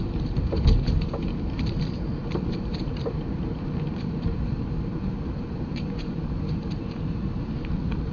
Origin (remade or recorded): remade